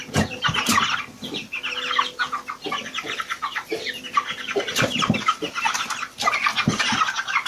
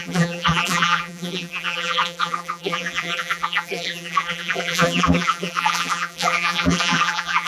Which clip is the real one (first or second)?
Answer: first